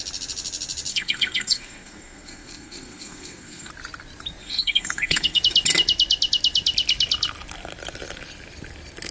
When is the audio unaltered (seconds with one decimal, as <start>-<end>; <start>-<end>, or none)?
0.0-0.9; 3.7-4.4; 5.4-9.1